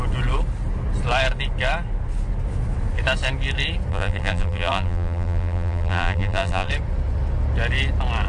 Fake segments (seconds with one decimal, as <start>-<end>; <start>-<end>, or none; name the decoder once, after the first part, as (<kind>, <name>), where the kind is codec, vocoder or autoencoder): 3.9-6.7 (vocoder, BigVGAN v2)